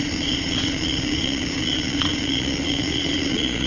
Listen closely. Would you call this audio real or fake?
fake